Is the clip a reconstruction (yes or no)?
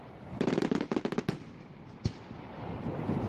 no